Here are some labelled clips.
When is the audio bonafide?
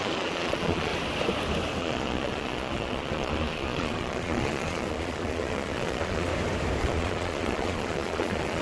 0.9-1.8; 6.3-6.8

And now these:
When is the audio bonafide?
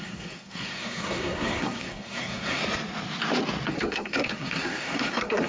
2.6-3.7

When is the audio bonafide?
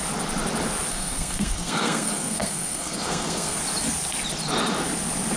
0.0-0.9; 3.6-5.4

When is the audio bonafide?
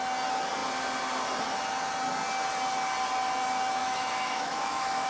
0.0-3.8